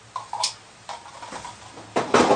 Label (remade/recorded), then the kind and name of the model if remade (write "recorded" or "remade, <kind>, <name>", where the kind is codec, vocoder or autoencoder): recorded